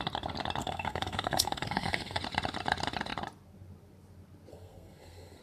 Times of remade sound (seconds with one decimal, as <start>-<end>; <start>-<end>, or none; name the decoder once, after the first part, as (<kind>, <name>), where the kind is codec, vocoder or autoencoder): 0.6-2.2 (codec, SNAC); 4.5-5.4